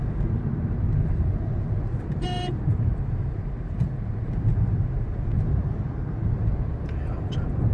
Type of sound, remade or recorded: remade